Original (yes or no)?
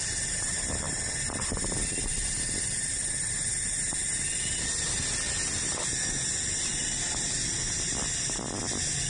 yes